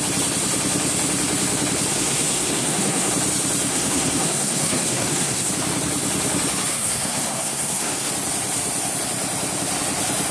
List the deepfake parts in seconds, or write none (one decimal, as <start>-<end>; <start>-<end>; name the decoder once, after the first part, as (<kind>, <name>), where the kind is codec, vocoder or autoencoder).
1.9-3.1 (codec, SNAC); 3.7-5.5; 6.7-8.1

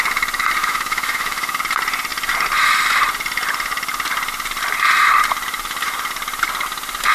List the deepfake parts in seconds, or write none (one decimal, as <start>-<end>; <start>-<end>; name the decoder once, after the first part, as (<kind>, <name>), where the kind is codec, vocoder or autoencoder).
0.6-1.6 (autoencoder, DAC-VAE)

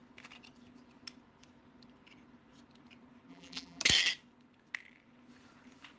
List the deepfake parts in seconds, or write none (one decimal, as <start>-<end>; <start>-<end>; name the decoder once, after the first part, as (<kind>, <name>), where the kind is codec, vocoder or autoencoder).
3.3-3.8 (vocoder, BigVGAN v2)

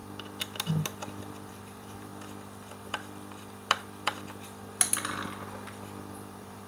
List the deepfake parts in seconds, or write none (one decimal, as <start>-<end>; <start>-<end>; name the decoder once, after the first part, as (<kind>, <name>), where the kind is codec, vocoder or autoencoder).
1.5-2.1 (vocoder, BigVGAN v2); 6.0-6.7

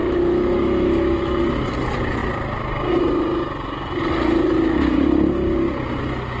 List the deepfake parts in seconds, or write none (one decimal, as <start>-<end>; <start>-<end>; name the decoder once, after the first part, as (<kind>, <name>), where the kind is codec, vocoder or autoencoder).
0.0-1.4 (autoencoder, DAC-VAE)

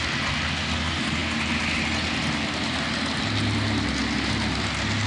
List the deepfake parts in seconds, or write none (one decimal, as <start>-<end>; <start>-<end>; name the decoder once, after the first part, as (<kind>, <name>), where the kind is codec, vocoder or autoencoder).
none

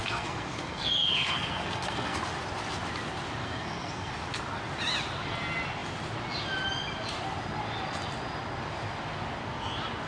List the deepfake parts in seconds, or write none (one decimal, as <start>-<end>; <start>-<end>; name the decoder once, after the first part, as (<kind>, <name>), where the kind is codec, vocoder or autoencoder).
0.0-2.2 (codec, SNAC); 3.4-4.1